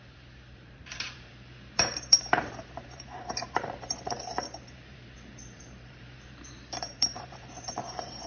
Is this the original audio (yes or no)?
no